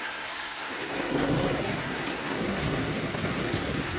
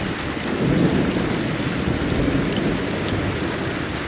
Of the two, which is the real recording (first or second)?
second